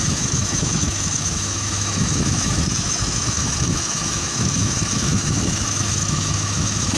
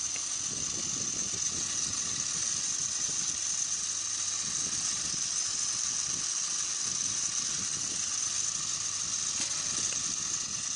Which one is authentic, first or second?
second